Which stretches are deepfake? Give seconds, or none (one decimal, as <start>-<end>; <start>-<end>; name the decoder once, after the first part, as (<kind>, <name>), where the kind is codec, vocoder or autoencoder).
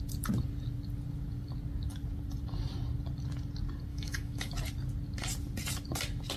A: 3.9-4.5 (autoencoder, DAC-VAE)